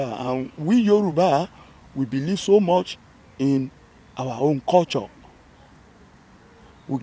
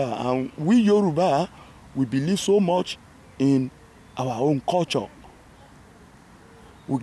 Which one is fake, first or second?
first